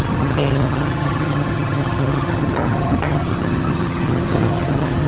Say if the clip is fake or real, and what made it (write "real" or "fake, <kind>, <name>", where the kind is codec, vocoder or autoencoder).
fake, vocoder, HiFi-GAN